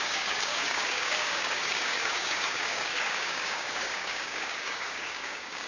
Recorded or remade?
remade